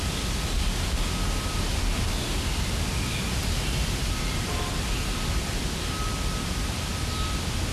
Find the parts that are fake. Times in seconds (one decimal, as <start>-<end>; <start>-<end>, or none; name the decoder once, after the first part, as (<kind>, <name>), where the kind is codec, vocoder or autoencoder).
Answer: none